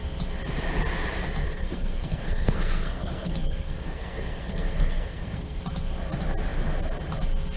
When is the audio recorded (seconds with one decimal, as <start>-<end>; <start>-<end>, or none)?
0.0-1.4; 5.6-7.6

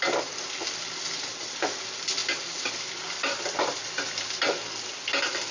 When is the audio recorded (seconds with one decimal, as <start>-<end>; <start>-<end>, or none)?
0.0-5.5

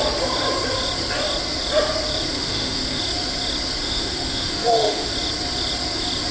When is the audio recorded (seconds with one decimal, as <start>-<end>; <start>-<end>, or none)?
0.0-2.3; 3.0-3.8; 5.1-6.3

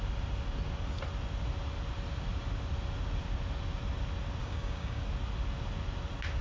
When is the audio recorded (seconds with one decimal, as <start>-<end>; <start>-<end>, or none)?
0.0-4.4; 5.0-6.4

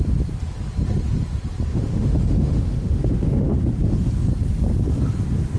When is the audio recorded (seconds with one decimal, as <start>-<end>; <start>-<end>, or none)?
0.0-1.7; 3.6-5.6

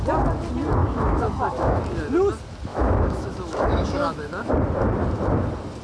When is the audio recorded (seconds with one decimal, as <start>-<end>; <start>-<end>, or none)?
0.0-0.8; 1.8-2.7; 4.5-5.8